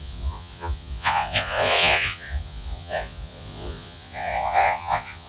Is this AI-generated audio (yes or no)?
yes